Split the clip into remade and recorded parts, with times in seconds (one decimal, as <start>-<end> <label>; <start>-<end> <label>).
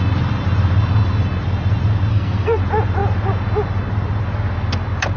0.0-2.1 recorded; 2.1-2.6 remade; 2.6-5.2 recorded